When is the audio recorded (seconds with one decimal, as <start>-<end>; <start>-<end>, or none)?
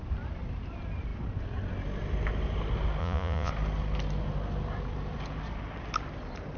0.0-3.0; 3.5-6.6